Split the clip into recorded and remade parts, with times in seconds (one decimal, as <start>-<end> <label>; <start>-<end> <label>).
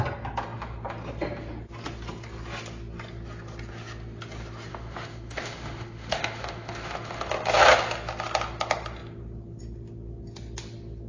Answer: 0.0-4.7 recorded; 4.7-7.3 remade; 7.3-11.1 recorded